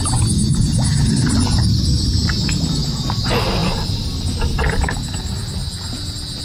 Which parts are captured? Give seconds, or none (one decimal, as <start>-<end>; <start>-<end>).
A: 0.0-3.6; 4.2-6.4